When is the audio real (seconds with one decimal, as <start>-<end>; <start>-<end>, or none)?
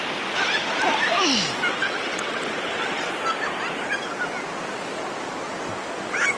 0.0-1.7; 3.1-6.4